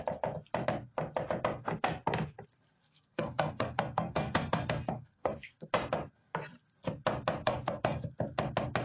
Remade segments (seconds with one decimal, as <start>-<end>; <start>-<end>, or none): 2.8-5.7; 7.4-8.1

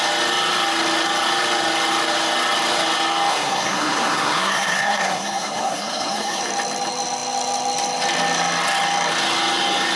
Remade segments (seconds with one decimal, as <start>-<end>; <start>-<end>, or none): 3.3-6.4

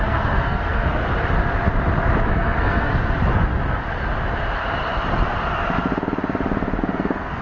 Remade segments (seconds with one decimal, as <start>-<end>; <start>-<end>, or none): 0.0-1.0; 2.3-2.9; 6.8-7.4

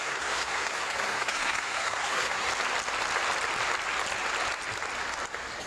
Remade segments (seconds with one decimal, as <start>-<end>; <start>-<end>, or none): 0.0-2.5

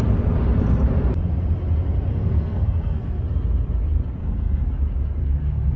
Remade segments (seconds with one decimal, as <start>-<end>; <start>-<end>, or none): 2.1-3.2; 4.2-4.8; 5.2-5.8